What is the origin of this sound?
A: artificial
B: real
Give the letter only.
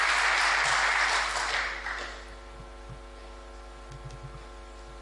B